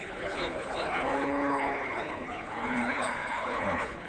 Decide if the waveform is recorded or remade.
remade